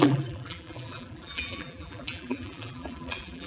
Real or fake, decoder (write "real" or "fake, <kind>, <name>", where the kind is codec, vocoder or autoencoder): fake, vocoder, BigVGAN v2